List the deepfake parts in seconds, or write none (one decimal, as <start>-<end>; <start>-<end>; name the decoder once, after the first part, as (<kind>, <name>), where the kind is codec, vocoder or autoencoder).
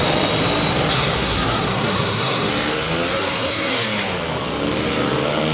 0.9-2.5 (codec, SNAC); 3.1-3.8